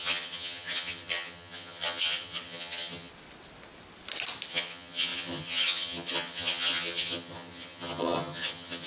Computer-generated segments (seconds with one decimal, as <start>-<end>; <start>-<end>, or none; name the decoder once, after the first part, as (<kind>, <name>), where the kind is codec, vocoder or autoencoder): 0.0-3.1 (vocoder, HiFi-GAN); 4.5-8.9